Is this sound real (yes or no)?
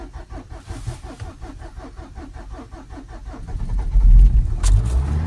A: yes